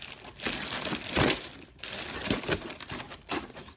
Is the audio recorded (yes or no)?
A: yes